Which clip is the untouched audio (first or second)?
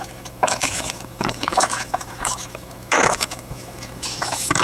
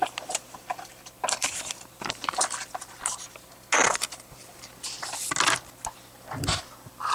second